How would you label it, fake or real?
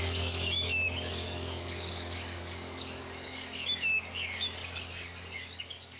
fake